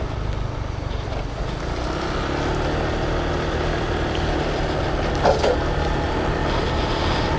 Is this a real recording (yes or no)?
yes